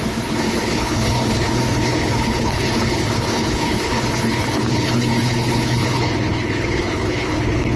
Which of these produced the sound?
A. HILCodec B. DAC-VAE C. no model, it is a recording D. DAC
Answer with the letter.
A